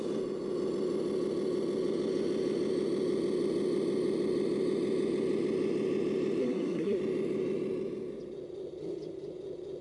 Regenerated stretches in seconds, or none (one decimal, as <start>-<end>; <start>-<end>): 6.4-7.0